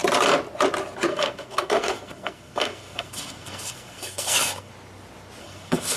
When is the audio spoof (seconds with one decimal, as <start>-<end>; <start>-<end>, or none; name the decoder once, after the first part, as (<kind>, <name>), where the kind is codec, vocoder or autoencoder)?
1.1-4.7 (codec, SNAC); 5.4-6.0